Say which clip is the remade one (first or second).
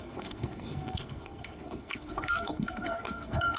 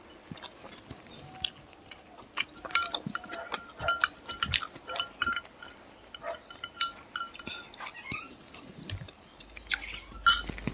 first